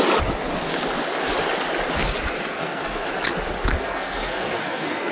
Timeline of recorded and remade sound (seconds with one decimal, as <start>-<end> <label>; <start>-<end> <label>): 0.0-2.5 recorded; 2.5-3.1 remade; 3.1-3.7 recorded; 3.7-5.1 remade